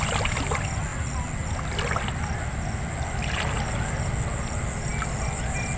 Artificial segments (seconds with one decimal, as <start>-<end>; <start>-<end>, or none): none